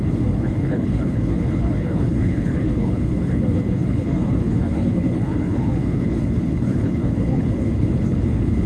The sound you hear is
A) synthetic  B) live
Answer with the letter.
A